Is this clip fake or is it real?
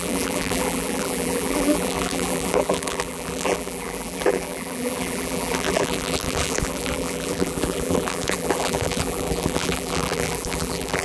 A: fake